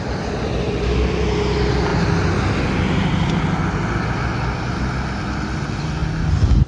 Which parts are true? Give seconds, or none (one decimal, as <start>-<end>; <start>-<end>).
0.0-6.7